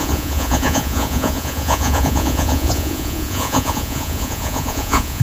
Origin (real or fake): fake